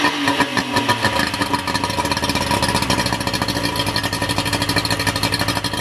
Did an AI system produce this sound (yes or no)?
no